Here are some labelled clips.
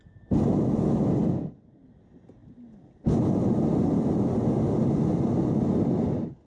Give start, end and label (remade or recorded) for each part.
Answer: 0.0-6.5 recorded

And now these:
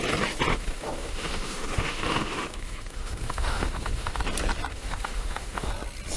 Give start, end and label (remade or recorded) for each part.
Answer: 0.0-0.5 recorded; 0.5-4.2 remade; 4.2-4.7 recorded; 4.7-5.7 remade; 5.7-6.2 recorded